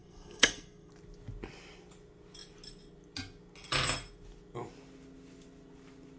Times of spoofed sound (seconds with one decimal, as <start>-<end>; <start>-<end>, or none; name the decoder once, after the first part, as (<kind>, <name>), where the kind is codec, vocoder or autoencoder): 0.0-0.9 (codec, SNAC)